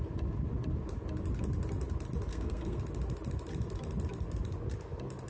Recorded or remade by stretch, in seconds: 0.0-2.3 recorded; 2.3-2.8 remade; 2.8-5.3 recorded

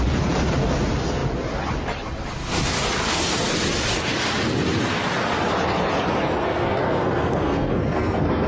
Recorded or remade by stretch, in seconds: 0.0-6.4 recorded; 6.4-8.5 remade

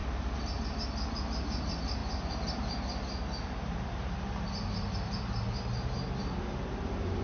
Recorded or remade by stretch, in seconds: 0.0-7.2 recorded

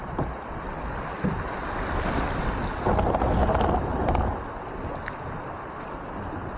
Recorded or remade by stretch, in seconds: 0.0-6.6 recorded

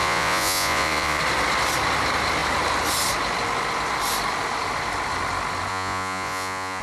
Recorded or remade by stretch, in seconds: 0.0-1.2 remade; 1.2-5.7 recorded; 5.7-6.8 remade

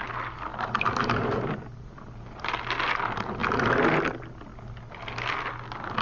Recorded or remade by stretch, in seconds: 0.0-0.5 recorded; 0.5-2.5 remade; 2.5-6.0 recorded

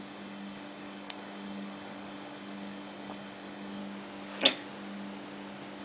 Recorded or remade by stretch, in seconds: 0.0-3.8 remade; 3.8-5.8 recorded

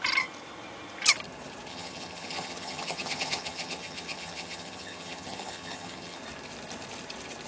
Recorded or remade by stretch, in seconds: 0.0-1.7 recorded; 1.7-6.2 remade; 6.2-7.5 recorded